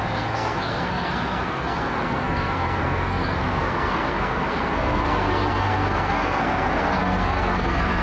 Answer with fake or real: fake